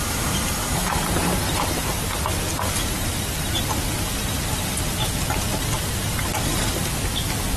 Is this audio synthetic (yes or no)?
no